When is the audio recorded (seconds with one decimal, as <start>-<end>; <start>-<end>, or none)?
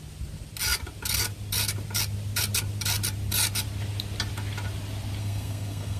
0.0-5.2